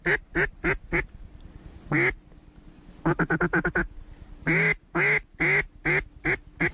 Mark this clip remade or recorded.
recorded